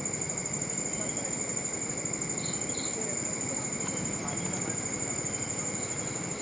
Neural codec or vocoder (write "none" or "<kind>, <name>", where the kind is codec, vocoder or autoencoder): none